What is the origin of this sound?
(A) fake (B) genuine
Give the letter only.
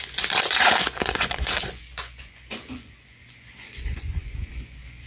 A